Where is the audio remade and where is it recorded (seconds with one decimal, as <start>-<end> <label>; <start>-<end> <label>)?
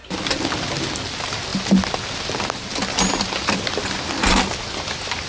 0.0-5.3 recorded